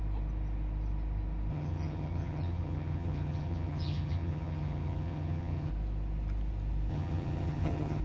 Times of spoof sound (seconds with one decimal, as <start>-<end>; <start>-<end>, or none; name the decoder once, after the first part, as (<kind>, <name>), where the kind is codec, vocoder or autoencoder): 1.5-5.7 (vocoder, HiFi-GAN); 6.9-8.0